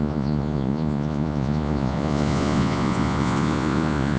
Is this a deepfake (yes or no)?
yes